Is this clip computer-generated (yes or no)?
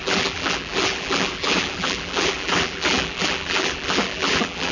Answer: yes